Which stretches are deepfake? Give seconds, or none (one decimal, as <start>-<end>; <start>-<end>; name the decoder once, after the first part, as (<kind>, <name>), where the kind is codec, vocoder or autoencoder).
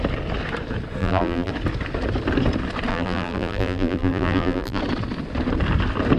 1.0-1.5 (vocoder, BigVGAN v2); 2.9-4.8